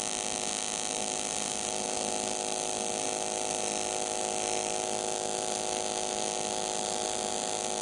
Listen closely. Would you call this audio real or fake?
real